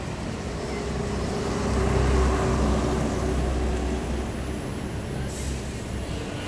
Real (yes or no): yes